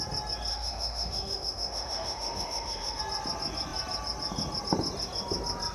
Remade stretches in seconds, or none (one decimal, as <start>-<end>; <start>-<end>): 0.5-3.0